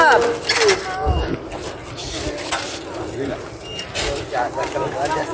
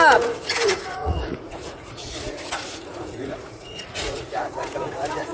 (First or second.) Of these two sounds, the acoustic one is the first